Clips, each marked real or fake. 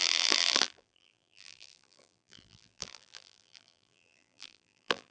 fake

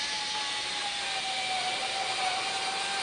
real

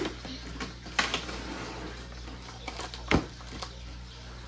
real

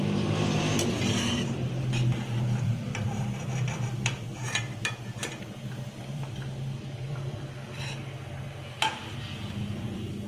fake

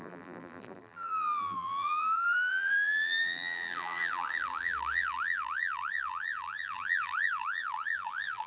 fake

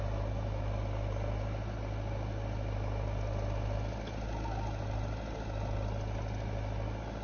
real